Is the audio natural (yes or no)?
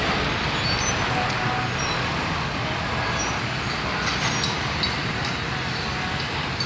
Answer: yes